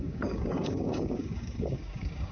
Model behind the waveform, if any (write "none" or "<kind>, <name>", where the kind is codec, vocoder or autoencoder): codec, DAC